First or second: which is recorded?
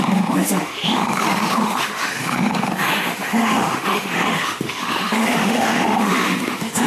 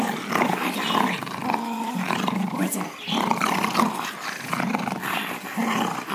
second